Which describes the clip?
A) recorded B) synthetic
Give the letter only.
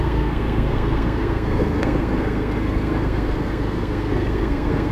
B